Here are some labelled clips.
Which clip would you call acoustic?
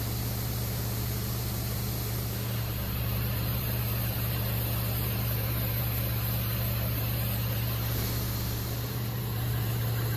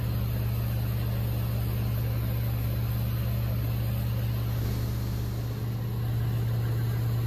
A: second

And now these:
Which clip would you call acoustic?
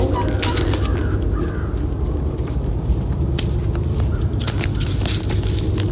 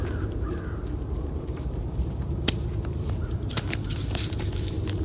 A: first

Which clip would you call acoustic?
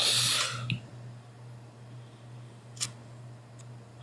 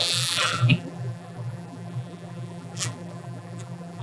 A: first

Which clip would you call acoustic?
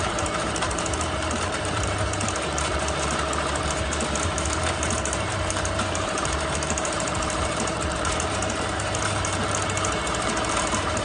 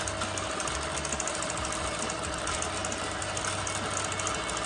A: second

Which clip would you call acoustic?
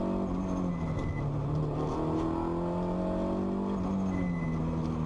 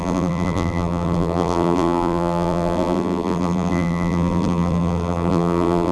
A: first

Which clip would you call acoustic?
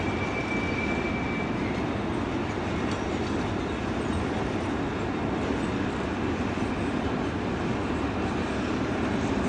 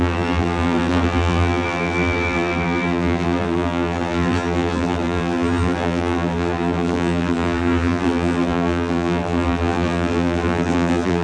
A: first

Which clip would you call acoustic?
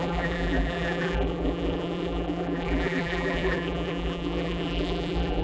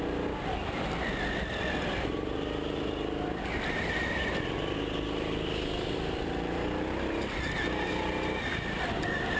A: second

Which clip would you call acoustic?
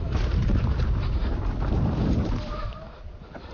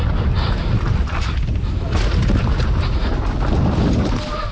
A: second